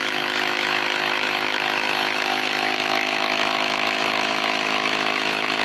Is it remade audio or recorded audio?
remade